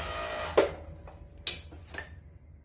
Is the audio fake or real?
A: real